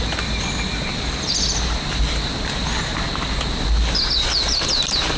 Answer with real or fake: real